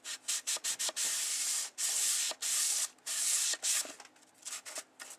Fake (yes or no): no